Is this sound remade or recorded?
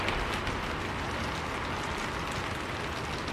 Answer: recorded